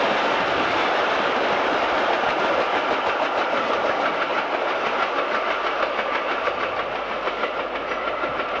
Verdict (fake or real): real